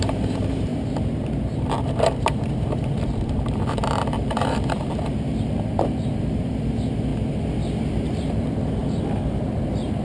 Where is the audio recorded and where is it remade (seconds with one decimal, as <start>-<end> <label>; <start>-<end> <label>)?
0.0-7.1 remade; 7.1-7.8 recorded; 7.8-8.8 remade; 8.8-9.3 recorded; 9.3-10.0 remade